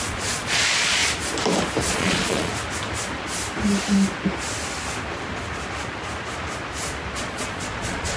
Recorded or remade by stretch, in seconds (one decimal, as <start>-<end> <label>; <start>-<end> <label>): 0.0-1.0 remade; 1.0-1.8 recorded; 1.8-2.5 remade; 2.5-7.2 recorded; 7.2-8.2 remade